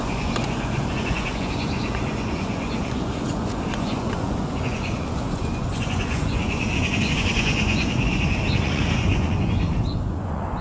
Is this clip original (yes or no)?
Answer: no